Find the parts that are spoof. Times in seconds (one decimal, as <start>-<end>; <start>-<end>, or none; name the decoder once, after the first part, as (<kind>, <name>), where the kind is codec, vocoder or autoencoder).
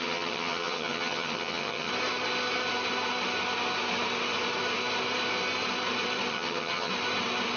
0.0-1.9 (vocoder, HiFi-GAN); 6.3-6.9